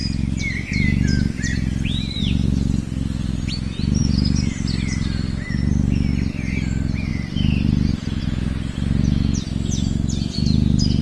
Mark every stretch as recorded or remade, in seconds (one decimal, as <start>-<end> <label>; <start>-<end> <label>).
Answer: 0.0-7.1 recorded; 7.1-8.2 remade; 8.2-11.0 recorded